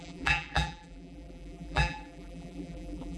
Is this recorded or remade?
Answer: remade